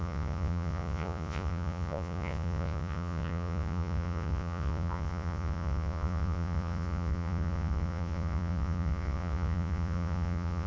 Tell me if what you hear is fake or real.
fake